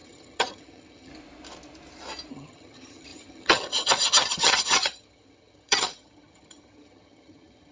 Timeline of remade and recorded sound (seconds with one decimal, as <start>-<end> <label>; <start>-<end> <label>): 0.0-1.1 remade; 1.1-2.3 recorded; 2.3-7.7 remade